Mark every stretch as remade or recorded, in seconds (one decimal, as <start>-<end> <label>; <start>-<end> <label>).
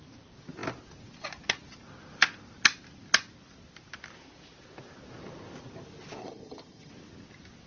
0.0-6.2 recorded; 6.2-6.9 remade; 6.9-7.7 recorded